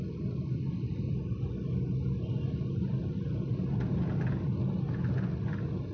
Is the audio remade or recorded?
recorded